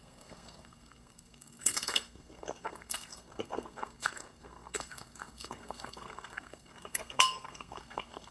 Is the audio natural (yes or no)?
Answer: no